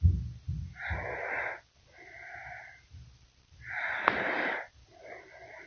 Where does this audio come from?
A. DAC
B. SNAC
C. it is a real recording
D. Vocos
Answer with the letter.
C